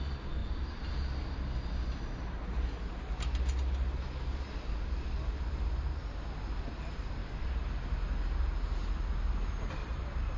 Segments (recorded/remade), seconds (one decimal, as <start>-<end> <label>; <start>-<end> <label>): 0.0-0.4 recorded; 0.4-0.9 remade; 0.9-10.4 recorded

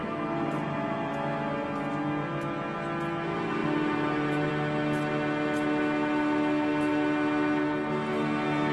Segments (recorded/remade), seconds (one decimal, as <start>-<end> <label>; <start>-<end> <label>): 0.0-1.1 remade; 1.1-3.6 recorded; 3.6-4.5 remade; 4.5-8.7 recorded

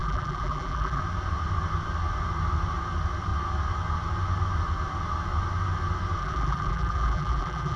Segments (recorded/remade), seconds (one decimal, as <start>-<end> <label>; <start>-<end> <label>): 0.0-1.0 remade; 1.0-6.2 recorded; 6.2-7.8 remade